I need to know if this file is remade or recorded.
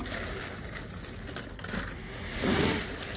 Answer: recorded